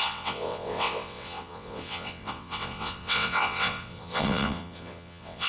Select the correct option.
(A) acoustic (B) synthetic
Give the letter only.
B